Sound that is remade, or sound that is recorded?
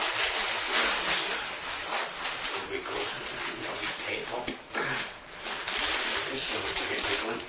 recorded